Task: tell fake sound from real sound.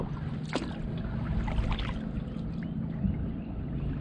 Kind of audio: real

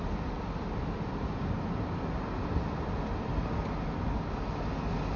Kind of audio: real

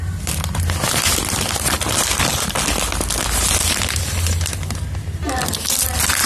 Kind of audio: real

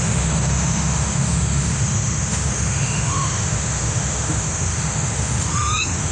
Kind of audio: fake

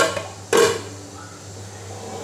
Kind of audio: real